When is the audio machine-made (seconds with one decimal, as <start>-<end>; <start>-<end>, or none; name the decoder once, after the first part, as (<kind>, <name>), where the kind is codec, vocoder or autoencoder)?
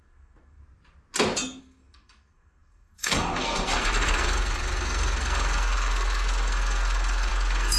0.0-0.6 (codec, SNAC); 1.6-7.8